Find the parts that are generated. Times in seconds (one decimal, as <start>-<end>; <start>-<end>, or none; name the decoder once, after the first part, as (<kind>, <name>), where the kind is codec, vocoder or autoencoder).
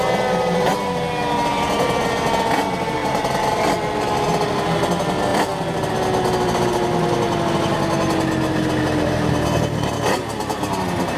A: 3.0-4.0 (vocoder, BigVGAN v2); 5.3-5.9